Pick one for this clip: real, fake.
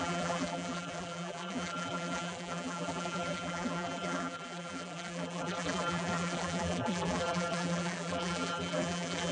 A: fake